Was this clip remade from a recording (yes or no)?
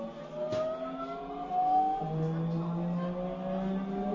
no